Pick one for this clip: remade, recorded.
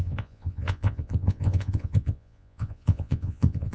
remade